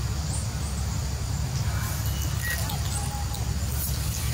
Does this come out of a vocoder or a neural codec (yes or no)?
no